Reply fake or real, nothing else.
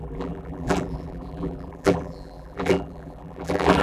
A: fake